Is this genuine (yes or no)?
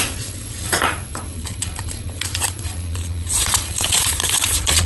no